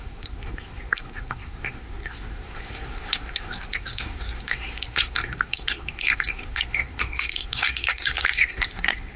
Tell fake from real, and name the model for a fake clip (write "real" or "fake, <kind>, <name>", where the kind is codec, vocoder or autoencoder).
fake, codec, SNAC